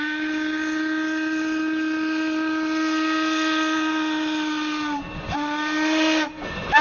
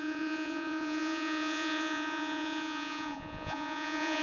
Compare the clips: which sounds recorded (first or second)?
first